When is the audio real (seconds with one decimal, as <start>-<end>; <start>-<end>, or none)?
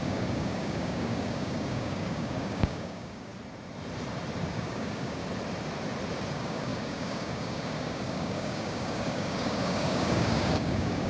3.3-4.5; 5.2-6.3